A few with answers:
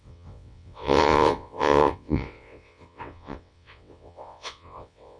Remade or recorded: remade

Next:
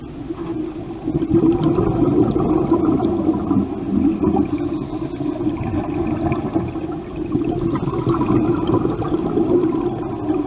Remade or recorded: recorded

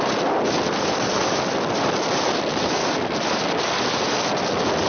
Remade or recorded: remade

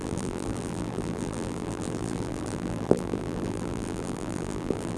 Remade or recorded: remade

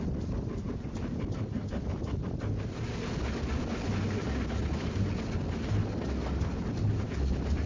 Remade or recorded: recorded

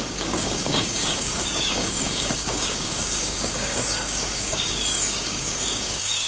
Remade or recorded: remade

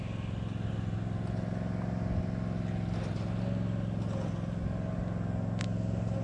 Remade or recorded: recorded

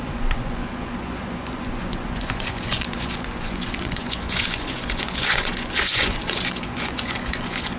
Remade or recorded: remade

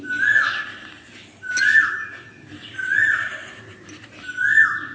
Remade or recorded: recorded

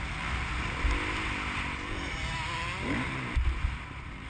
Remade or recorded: recorded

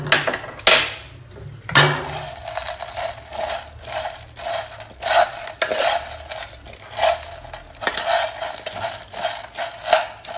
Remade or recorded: recorded